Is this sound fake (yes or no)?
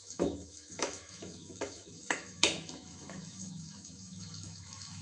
yes